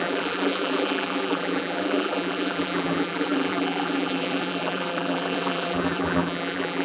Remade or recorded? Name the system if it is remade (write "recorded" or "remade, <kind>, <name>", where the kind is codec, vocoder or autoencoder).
remade, vocoder, BigVGAN v2